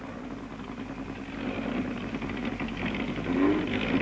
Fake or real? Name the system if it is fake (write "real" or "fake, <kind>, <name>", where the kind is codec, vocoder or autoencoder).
real